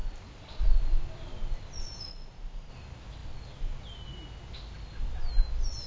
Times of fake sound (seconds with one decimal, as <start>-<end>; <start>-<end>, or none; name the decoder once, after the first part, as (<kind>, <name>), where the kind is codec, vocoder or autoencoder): 2.1-2.7 (vocoder, Vocos)